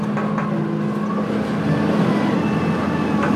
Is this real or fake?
real